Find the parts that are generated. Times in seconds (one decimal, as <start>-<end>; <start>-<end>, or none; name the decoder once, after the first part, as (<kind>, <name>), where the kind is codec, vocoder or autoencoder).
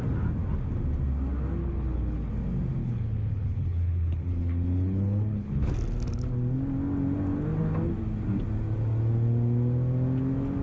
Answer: 1.6-2.3 (codec, HILCodec); 2.8-5.7